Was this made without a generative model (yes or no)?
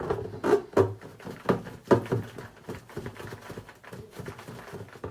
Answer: yes